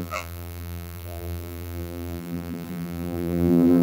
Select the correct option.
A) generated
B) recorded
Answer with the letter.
A